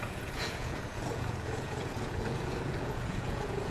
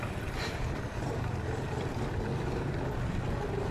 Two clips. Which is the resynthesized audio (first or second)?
first